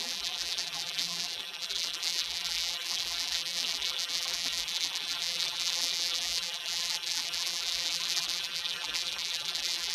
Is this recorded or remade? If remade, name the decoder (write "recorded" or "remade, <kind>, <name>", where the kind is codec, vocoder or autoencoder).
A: remade, vocoder, BigVGAN v2